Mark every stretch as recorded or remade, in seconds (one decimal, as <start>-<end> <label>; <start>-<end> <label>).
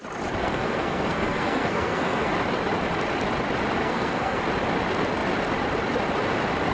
0.0-0.4 recorded; 0.4-2.3 remade; 2.3-3.8 recorded; 3.8-4.4 remade; 4.4-6.7 recorded